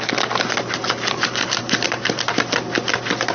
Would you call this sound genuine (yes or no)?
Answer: yes